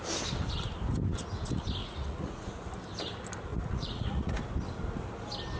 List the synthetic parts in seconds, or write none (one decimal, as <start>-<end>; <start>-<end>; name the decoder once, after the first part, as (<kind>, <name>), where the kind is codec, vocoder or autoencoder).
1.8-2.7 (vocoder, Vocos); 3.5-4.4